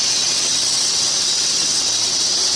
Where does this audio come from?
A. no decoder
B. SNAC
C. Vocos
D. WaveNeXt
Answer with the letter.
D